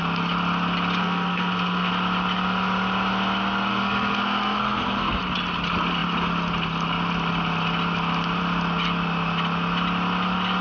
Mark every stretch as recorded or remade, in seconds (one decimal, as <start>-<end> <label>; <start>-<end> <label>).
0.0-1.0 recorded; 1.0-1.9 remade; 1.9-3.7 recorded; 3.7-5.2 remade; 5.2-10.6 recorded